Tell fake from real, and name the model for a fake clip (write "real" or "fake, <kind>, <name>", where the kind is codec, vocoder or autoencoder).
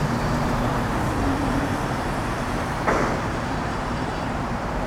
fake, vocoder, BigVGAN v2